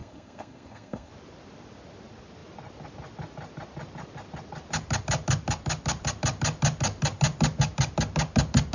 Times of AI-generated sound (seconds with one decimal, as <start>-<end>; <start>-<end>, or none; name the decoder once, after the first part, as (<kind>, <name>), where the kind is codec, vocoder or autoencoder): 0.0-1.1 (codec, SNAC)